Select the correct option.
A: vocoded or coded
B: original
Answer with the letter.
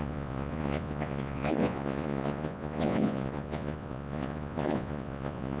A